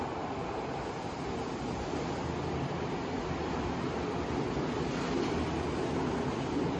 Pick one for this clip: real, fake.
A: real